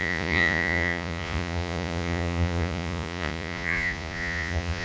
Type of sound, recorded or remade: remade